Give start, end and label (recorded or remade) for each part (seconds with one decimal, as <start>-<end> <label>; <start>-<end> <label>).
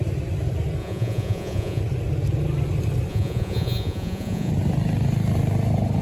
0.0-0.8 recorded; 0.8-1.8 remade; 1.8-3.1 recorded; 3.1-4.5 remade; 4.5-6.0 recorded